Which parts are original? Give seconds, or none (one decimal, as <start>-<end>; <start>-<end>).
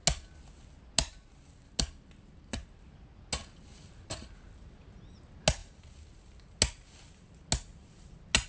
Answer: 0.0-8.5